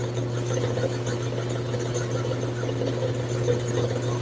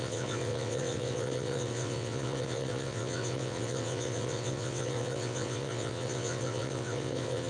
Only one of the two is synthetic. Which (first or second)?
second